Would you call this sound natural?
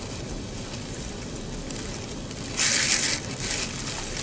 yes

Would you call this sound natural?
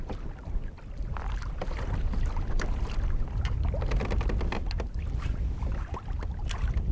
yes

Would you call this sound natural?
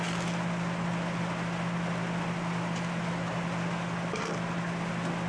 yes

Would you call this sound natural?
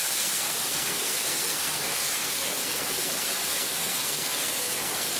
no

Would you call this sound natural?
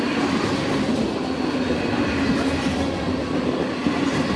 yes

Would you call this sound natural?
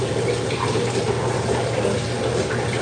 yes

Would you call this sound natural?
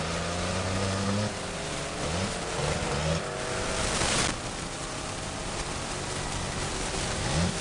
yes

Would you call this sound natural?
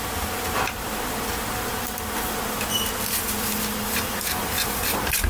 yes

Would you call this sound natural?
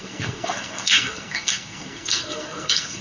no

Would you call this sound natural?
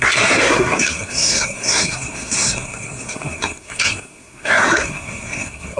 no